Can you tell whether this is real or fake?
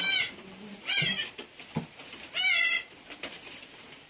real